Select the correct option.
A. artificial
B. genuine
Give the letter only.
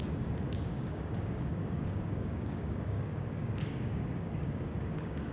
A